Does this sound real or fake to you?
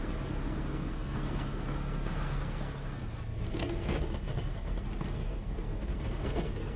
fake